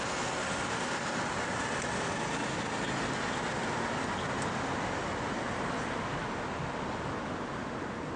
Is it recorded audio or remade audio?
recorded